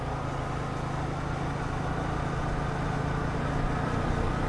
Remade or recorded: recorded